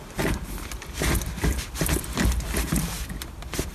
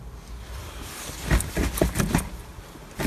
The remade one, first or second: first